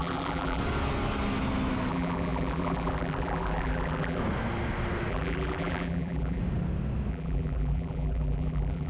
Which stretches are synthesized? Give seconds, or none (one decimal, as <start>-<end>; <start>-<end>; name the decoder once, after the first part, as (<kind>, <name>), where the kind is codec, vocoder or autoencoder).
0.0-0.6 (vocoder, BigVGAN v2); 1.9-4.2; 5.1-6.4; 7.1-8.9